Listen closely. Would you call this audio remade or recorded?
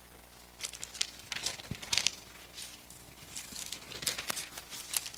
recorded